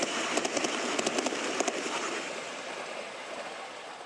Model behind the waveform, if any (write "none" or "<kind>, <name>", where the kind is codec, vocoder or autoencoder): vocoder, BigVGAN v2